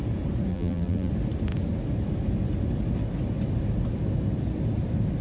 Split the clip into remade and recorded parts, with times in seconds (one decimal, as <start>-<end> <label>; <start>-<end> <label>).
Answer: 0.0-0.5 recorded; 0.5-1.1 remade; 1.1-5.2 recorded